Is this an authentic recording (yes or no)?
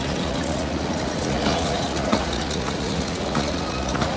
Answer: no